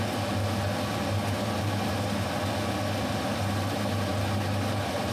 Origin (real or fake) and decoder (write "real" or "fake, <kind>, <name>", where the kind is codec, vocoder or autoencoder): real